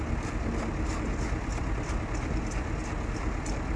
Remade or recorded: recorded